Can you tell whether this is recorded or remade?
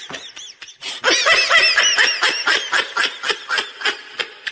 recorded